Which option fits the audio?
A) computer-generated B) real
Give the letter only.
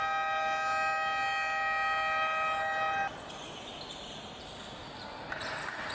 B